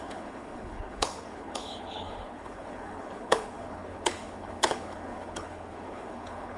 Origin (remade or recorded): remade